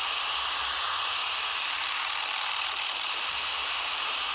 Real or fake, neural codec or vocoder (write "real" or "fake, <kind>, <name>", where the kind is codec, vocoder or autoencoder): real